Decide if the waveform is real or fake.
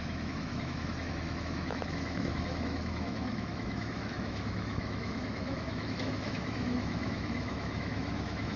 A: fake